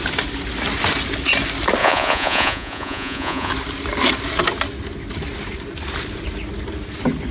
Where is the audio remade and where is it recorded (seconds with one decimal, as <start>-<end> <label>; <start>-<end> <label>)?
0.0-1.8 recorded; 1.8-3.5 remade; 3.5-7.3 recorded